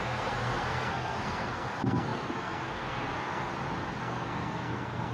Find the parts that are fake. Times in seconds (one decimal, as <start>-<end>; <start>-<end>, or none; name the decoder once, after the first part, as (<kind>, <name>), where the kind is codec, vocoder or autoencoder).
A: 0.0-3.5 (codec, SNAC); 4.0-5.1